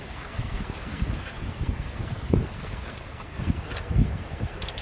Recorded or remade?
remade